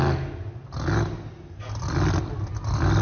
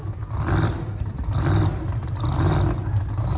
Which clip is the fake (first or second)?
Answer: second